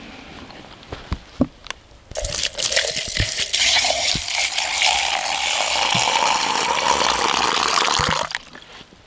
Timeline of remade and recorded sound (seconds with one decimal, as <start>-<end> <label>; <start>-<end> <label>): 0.0-3.6 recorded; 3.6-4.1 remade; 4.1-9.1 recorded

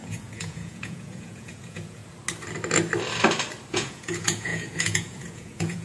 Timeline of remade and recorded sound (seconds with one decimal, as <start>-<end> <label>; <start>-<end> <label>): 0.0-2.0 remade; 2.0-3.7 recorded; 3.7-5.8 remade

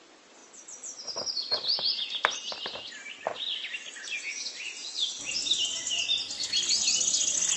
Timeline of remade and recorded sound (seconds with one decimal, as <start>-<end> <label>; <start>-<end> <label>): 0.0-7.6 recorded

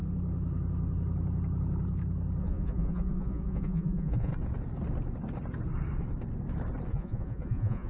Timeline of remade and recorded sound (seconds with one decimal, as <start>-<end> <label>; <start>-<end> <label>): 0.0-2.4 recorded; 2.4-4.3 remade; 4.3-6.9 recorded; 6.9-7.9 remade

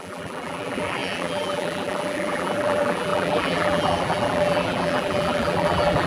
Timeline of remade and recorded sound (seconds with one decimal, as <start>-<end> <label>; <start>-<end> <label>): 0.0-6.1 remade

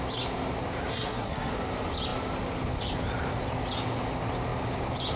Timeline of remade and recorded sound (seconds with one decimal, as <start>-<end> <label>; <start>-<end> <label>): 0.0-0.9 recorded; 0.9-1.5 remade; 1.5-5.2 recorded

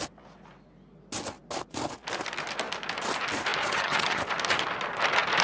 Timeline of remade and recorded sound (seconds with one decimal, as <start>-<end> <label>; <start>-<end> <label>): 0.0-3.6 recorded; 3.6-4.2 remade; 4.2-5.4 recorded